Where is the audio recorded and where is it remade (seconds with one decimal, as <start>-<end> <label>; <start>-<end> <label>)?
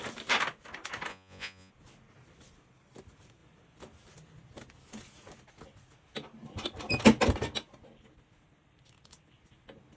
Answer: 0.0-1.1 recorded; 1.1-1.7 remade; 1.7-10.0 recorded